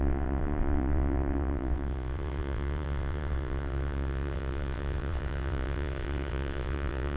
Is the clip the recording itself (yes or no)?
no